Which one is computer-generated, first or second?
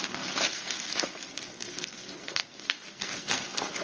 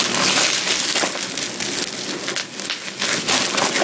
first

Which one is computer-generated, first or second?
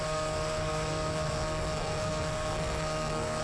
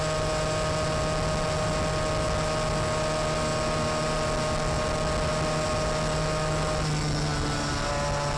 first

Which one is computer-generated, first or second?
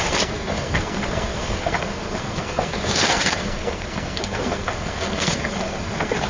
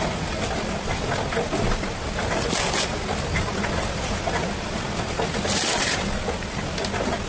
first